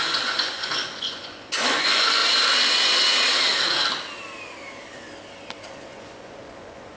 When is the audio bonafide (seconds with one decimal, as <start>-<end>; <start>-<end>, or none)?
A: 2.2-5.7